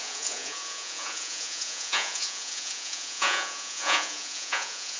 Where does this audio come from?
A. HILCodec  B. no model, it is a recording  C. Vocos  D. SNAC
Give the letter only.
C